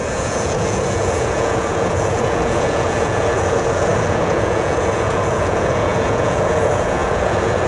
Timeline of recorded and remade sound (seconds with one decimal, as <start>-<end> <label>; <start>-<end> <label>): 0.0-7.7 remade